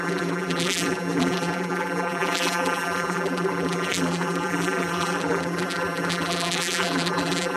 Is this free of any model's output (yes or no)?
no